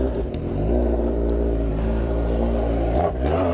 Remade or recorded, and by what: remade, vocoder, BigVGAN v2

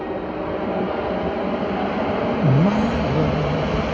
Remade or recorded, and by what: recorded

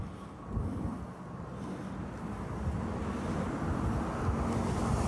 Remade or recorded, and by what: recorded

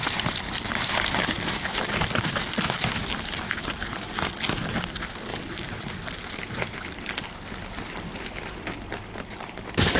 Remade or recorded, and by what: remade, vocoder, BigVGAN v2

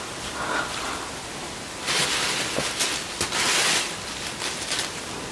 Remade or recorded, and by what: recorded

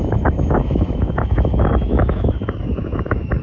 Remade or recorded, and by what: remade, autoencoder, DAC-VAE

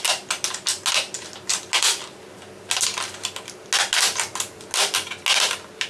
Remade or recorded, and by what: recorded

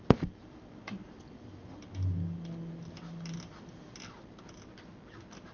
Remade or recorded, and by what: recorded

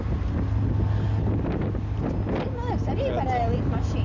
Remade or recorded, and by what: recorded